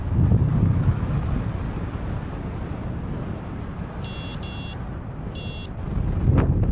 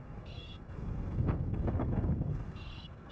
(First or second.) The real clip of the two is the first